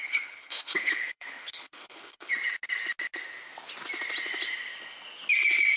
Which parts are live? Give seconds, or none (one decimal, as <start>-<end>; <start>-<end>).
2.3-5.8